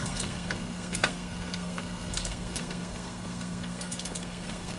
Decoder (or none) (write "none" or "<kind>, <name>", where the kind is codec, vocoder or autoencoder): codec, SNAC